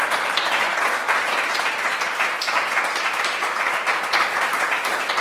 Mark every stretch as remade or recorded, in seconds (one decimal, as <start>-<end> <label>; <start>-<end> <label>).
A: 0.0-5.2 recorded